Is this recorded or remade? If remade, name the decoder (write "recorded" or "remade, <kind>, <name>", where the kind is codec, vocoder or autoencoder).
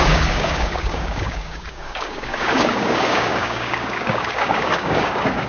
remade, codec, DAC